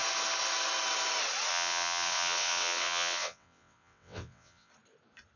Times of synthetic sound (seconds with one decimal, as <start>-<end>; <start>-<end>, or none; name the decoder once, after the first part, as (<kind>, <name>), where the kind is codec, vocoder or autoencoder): 1.5-4.7 (vocoder, WaveNeXt)